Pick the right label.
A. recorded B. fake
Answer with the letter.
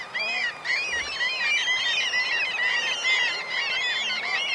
B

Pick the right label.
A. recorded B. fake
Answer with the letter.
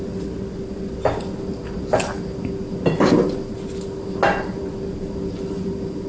A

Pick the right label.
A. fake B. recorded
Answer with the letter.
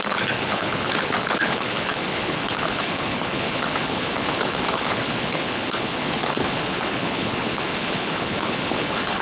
A